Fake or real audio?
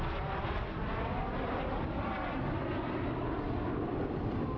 real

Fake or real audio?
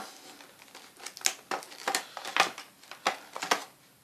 real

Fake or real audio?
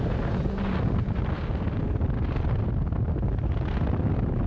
real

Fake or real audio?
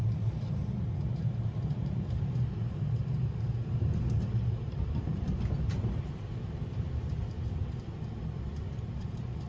fake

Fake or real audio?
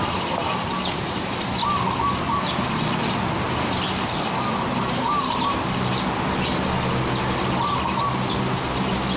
real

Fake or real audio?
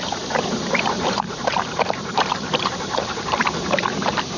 fake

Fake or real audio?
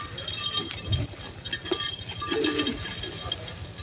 fake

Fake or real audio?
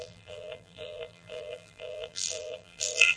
fake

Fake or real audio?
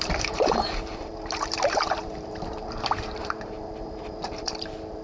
fake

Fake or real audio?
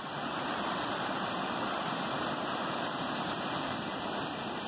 fake